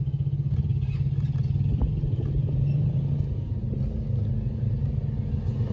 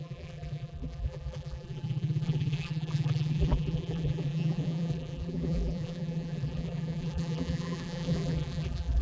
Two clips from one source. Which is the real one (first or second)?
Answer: first